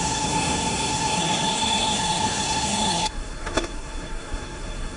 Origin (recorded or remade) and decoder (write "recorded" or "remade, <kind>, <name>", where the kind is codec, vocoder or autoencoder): remade, codec, SNAC